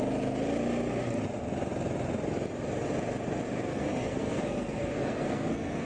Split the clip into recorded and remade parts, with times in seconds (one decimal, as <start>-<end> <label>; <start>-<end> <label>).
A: 0.0-3.7 recorded; 3.7-5.9 remade